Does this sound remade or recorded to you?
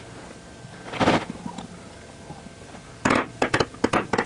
recorded